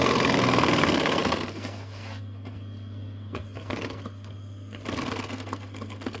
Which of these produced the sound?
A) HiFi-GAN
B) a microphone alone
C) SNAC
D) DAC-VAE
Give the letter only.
C